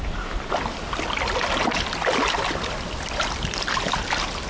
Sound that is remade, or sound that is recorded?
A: recorded